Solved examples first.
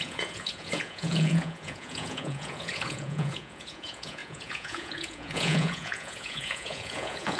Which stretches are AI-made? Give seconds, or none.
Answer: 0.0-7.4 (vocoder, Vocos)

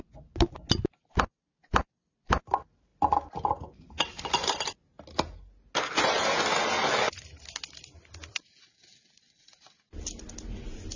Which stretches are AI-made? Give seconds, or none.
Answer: none

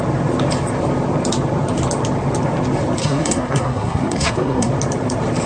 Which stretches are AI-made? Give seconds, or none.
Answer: 3.0-4.7 (codec, SNAC)

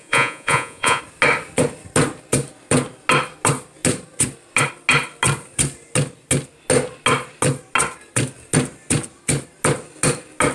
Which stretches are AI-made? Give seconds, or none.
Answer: 0.0-1.0 (vocoder, Vocos)

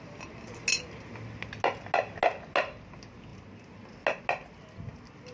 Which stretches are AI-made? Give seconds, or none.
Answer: none

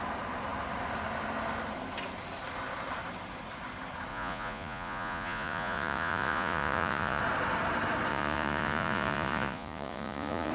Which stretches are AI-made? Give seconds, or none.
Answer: 4.1-7.2 (vocoder, Vocos); 8.1-10.5

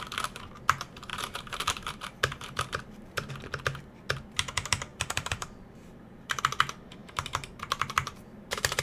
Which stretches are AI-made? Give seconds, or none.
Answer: 1.1-3.3 (vocoder, BigVGAN v2); 4.9-6.4; 7.0-8.8

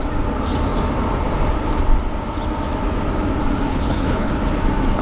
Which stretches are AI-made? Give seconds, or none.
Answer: 3.7-4.3 (codec, HILCodec)